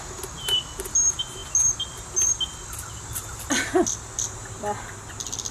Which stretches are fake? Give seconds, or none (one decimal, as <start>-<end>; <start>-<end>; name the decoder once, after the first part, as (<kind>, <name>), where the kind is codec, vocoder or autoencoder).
none